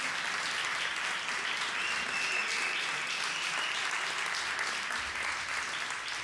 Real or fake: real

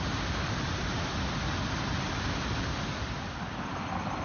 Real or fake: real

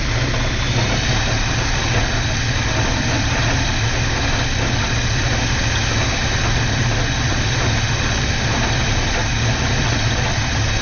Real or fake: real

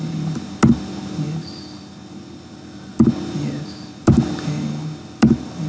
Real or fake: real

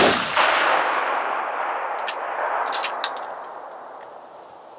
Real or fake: real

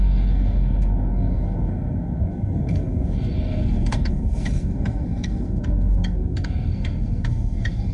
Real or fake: fake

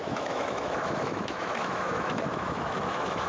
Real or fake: fake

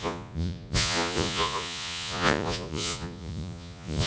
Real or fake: fake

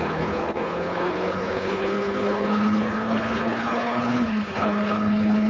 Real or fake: fake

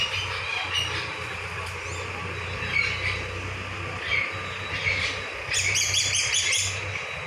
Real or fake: real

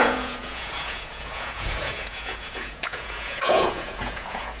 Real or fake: fake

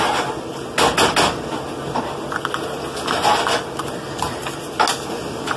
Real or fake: real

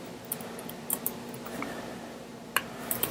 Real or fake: fake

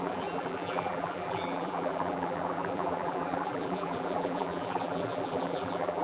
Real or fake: fake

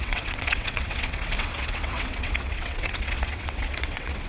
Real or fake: fake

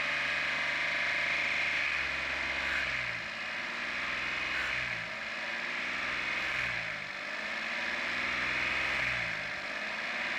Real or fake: real